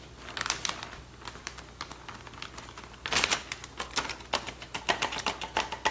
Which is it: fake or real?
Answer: real